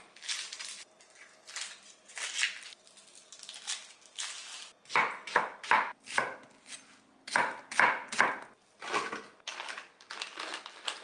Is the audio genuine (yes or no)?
yes